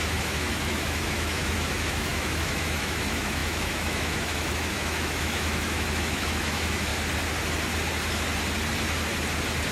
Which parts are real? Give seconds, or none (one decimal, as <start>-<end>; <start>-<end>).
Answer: 6.9-9.7